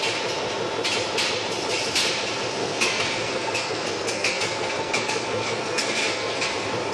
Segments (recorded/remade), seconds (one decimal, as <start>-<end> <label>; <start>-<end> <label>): 0.0-2.6 recorded; 2.6-6.4 remade; 6.4-6.9 recorded